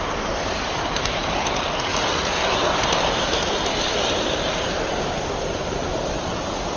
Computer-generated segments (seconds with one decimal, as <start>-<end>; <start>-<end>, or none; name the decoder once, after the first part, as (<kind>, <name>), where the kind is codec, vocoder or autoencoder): 0.0-1.9 (vocoder, BigVGAN v2); 6.0-6.8